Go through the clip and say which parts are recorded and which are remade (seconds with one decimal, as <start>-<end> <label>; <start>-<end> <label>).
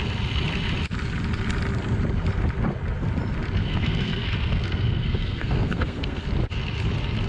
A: 0.0-3.6 recorded; 3.6-6.2 remade; 6.2-7.3 recorded